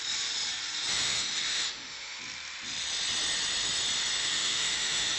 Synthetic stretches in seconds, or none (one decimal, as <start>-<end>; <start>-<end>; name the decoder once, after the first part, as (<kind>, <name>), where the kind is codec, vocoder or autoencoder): 0.9-2.2 (autoencoder, DAC-VAE); 4.2-5.2